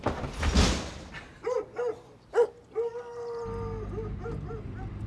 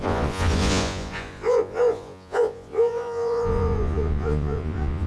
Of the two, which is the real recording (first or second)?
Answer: first